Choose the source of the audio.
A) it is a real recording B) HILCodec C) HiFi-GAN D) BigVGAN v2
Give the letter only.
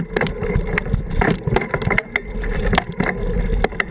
A